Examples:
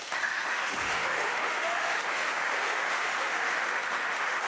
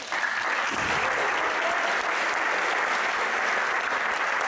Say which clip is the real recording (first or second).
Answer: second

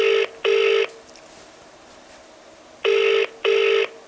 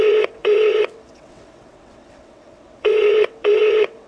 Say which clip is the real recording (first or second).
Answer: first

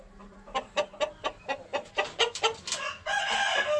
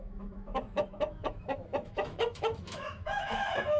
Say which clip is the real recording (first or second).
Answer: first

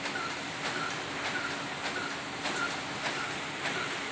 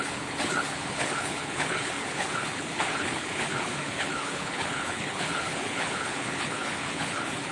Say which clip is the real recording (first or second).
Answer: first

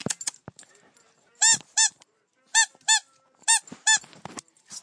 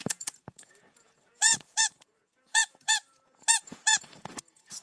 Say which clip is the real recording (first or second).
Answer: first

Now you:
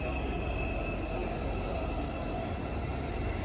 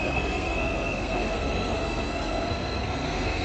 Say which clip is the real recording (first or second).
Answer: first